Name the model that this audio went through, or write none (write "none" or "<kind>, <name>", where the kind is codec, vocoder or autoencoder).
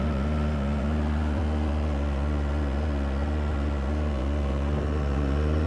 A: vocoder, Vocos